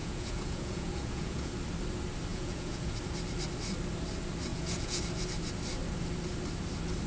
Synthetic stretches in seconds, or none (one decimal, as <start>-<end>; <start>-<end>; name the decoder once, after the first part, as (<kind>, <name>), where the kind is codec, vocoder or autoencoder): 0.0-1.5 (vocoder, Vocos); 2.3-3.0; 4.5-5.0